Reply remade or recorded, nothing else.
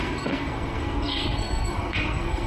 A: remade